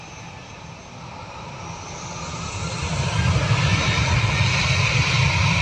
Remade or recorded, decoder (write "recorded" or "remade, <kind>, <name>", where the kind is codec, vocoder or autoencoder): recorded